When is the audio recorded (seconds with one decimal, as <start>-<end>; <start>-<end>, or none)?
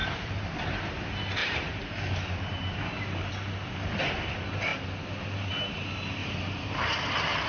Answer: 0.9-1.4; 3.3-4.7; 5.5-6.2; 6.9-7.5